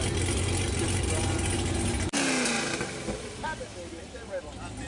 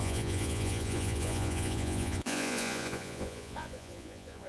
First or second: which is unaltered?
first